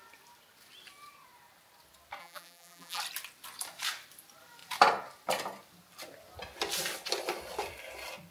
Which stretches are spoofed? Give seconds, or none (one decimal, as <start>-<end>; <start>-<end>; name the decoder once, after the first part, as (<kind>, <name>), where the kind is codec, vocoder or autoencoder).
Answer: 2.2-3.0 (vocoder, BigVGAN v2)